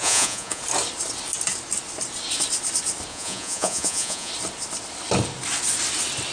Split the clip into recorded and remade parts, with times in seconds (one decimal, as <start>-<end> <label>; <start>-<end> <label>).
0.0-0.6 remade; 0.6-3.1 recorded; 3.1-4.3 remade; 4.3-6.3 recorded